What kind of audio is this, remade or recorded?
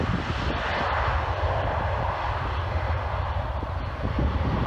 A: recorded